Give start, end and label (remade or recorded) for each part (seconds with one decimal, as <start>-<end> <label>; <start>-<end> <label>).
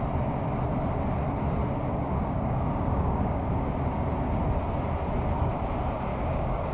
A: 0.0-1.6 recorded; 1.6-3.7 remade; 3.7-6.1 recorded; 6.1-6.7 remade